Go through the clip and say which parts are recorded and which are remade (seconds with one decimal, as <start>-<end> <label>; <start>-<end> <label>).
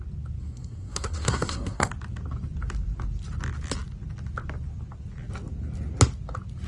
0.0-0.4 recorded; 0.4-1.9 remade; 1.9-6.7 recorded